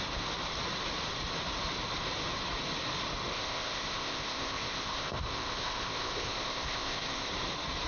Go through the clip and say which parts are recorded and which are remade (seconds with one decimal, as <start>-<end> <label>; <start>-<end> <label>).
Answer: 0.0-3.3 recorded; 3.3-7.3 remade; 7.3-7.9 recorded